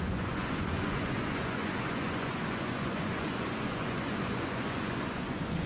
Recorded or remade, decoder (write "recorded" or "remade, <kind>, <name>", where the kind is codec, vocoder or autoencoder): remade, vocoder, Vocos